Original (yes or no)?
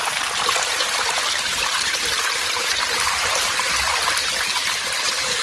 no